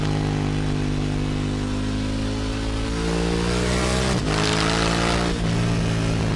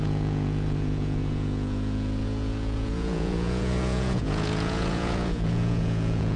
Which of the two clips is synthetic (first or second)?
second